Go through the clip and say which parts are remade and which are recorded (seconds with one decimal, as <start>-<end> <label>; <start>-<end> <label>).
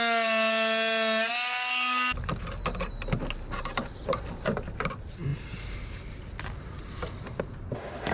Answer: 0.0-5.3 recorded; 5.3-7.4 remade; 7.4-8.1 recorded